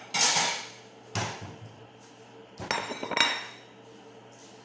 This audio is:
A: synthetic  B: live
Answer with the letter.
B